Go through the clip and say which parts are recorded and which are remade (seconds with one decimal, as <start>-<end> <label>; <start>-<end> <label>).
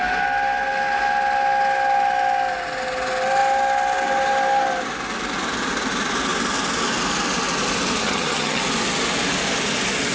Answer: 0.0-8.0 recorded; 8.0-8.6 remade; 8.6-10.1 recorded